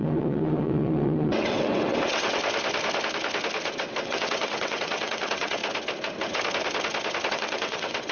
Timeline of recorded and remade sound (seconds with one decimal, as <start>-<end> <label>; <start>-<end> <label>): 0.0-2.4 remade; 2.4-3.8 recorded; 3.8-5.6 remade; 5.6-7.3 recorded; 7.3-8.1 remade